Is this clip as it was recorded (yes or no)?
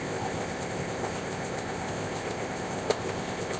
no